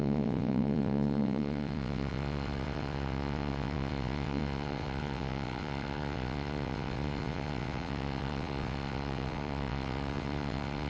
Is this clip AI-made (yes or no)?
yes